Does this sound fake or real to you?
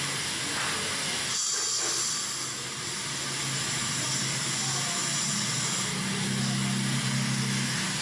real